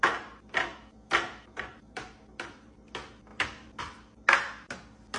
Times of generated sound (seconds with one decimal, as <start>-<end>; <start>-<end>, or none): 1.7-2.9; 3.3-3.8